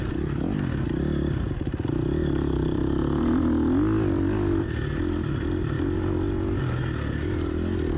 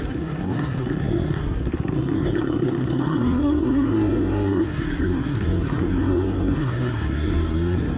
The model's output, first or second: second